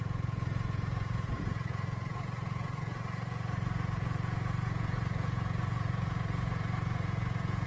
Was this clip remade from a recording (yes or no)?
yes